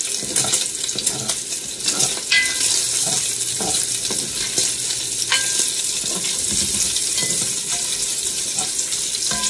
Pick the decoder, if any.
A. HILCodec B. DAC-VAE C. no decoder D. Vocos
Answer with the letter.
C